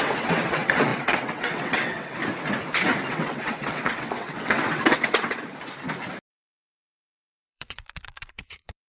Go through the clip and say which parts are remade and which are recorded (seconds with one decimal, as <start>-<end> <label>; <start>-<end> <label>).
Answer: 0.0-2.2 remade; 2.2-3.1 recorded; 3.1-5.5 remade; 5.5-6.3 recorded; 6.3-8.9 remade